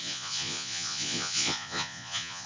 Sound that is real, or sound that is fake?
fake